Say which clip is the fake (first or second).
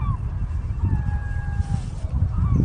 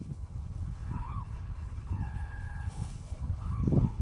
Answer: second